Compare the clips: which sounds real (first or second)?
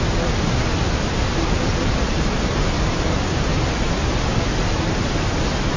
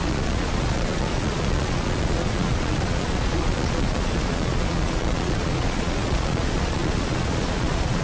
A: first